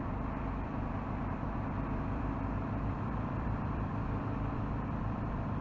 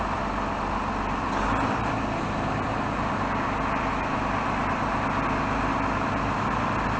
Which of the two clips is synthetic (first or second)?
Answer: first